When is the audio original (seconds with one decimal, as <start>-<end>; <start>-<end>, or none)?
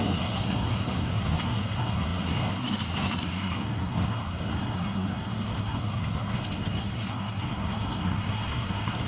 none